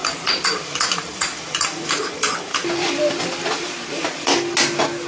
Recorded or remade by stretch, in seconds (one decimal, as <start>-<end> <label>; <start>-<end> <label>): 0.0-1.9 remade; 1.9-2.5 recorded; 2.5-3.2 remade; 3.2-5.1 recorded